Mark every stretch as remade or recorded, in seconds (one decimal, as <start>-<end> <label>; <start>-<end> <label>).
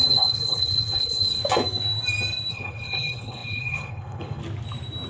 0.0-1.4 remade; 1.4-2.5 recorded; 2.5-4.4 remade; 4.4-5.1 recorded